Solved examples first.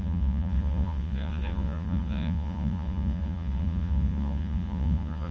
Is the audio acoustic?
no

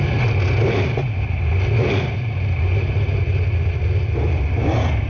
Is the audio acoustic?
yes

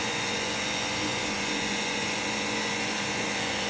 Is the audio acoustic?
no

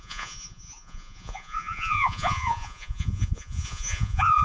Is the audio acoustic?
no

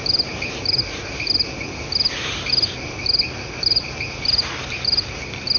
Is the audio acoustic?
yes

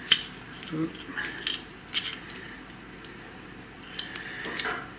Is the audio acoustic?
yes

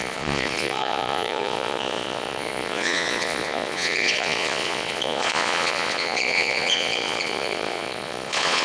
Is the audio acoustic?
no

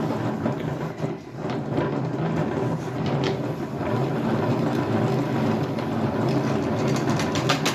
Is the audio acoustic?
yes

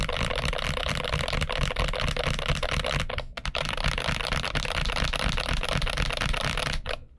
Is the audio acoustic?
yes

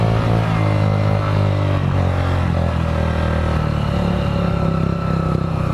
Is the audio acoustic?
yes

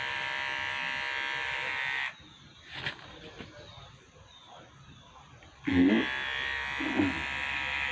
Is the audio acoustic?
yes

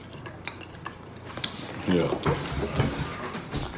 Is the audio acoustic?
yes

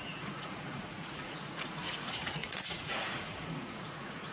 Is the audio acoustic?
no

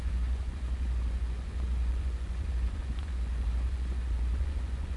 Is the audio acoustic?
no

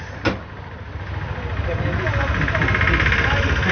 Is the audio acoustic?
yes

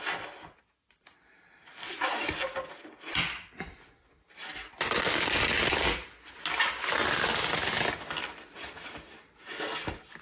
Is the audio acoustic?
yes